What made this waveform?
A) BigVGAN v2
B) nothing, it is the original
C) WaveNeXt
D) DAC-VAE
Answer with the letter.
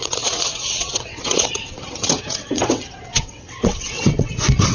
C